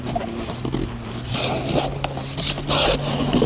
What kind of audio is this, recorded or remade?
recorded